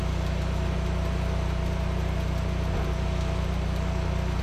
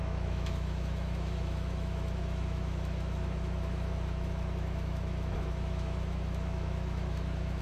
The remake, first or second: second